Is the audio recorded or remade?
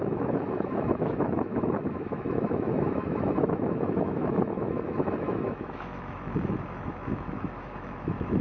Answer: remade